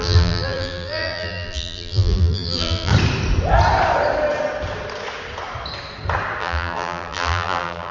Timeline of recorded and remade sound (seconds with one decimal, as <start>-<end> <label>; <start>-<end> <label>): 0.0-2.9 remade; 2.9-6.4 recorded; 6.4-7.9 remade